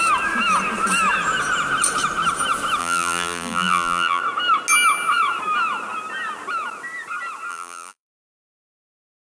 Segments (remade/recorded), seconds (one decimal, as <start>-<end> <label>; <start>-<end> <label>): 0.0-2.8 recorded; 2.8-4.2 remade; 4.2-7.5 recorded; 7.5-8.2 remade; 8.2-9.4 recorded